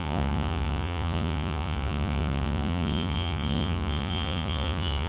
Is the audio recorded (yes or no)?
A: no